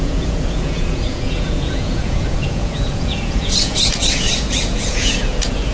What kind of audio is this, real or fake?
fake